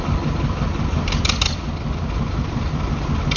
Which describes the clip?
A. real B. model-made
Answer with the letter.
A